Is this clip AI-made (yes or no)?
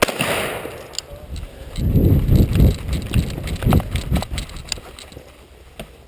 no